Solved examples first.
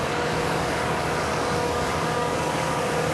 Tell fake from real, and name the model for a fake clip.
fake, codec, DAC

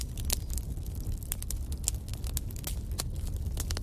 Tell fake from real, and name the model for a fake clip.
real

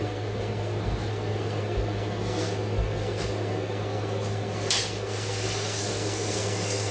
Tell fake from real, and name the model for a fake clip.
fake, codec, SNAC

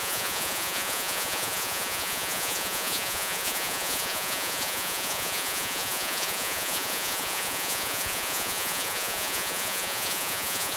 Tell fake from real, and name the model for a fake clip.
fake, vocoder, Vocos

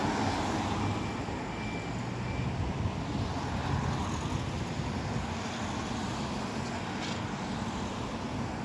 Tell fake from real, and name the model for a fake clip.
real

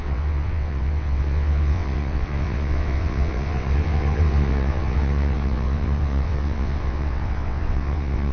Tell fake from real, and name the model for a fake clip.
fake, vocoder, WaveNeXt